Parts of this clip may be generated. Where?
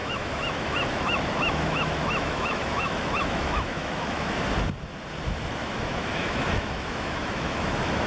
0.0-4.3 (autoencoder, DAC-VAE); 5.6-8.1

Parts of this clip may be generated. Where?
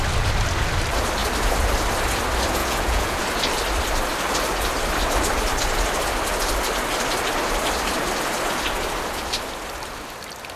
2.6-3.2 (vocoder, Vocos)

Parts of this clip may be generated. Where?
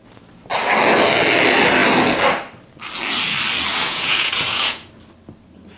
3.7-4.9 (vocoder, Vocos)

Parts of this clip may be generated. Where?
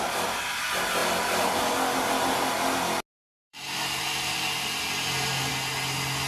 1.0-1.6 (vocoder, BigVGAN v2); 3.5-5.5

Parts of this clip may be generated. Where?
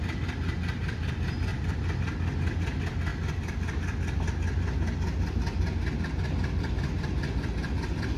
1.5-2.0 (vocoder, BigVGAN v2)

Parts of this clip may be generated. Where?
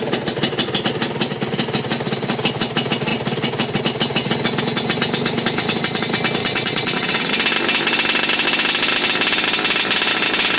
6.4-7.3 (vocoder, WaveNeXt)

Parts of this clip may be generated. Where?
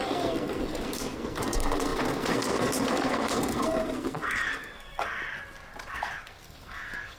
0.0-5.2 (codec, SNAC); 5.9-7.2